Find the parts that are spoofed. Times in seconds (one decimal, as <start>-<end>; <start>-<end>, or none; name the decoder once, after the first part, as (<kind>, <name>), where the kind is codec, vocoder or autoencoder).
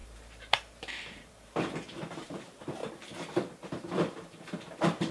0.0-2.8 (vocoder, BigVGAN v2); 3.5-5.1